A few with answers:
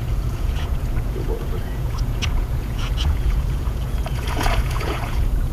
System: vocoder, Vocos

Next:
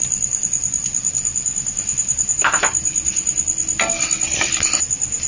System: none